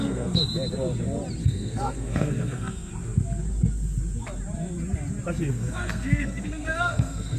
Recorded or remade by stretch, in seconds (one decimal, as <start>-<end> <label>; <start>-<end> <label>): 0.0-0.4 remade; 0.4-1.4 recorded; 1.4-2.9 remade; 2.9-5.5 recorded; 5.5-7.4 remade